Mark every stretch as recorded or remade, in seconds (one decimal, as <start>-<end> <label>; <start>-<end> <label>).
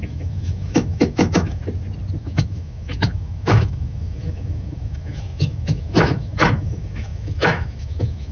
0.0-1.6 remade; 1.6-2.2 recorded; 2.2-8.3 remade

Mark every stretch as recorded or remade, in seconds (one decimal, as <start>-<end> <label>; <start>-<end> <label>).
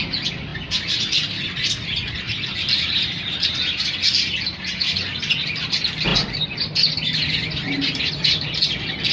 0.0-9.1 recorded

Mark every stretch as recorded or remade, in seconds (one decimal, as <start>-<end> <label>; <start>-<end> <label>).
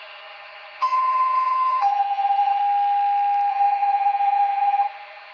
0.0-2.6 remade; 2.6-3.5 recorded; 3.5-5.3 remade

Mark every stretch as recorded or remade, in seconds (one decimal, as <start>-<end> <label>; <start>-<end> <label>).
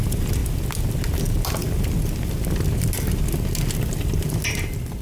0.0-5.0 recorded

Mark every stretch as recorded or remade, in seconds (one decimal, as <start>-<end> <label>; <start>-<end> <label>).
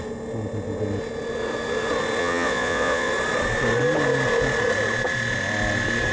0.0-2.2 recorded; 2.2-3.1 remade; 3.1-6.1 recorded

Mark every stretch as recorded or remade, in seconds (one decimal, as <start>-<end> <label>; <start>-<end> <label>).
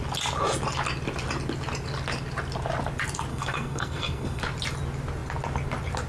0.0-3.3 recorded; 3.3-4.4 remade; 4.4-6.1 recorded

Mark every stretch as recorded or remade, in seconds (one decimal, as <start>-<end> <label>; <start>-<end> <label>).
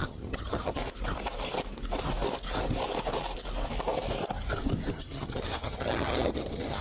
0.0-0.8 remade; 0.8-4.9 recorded; 4.9-6.8 remade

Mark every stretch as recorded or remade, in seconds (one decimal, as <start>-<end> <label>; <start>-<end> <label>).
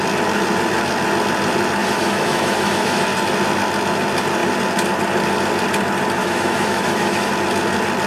0.0-1.8 recorded; 1.8-3.0 remade; 3.0-6.2 recorded; 6.2-7.3 remade; 7.3-8.1 recorded